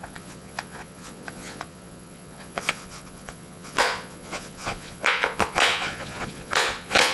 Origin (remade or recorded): remade